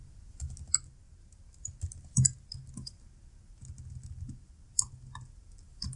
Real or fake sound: real